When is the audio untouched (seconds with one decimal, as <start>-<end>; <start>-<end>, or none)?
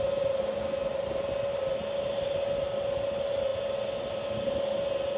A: 0.0-5.2